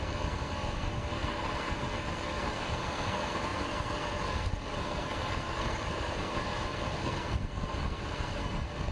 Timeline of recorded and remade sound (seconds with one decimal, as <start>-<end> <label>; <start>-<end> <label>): 0.0-8.9 remade